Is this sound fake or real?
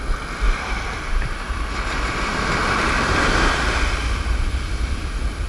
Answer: real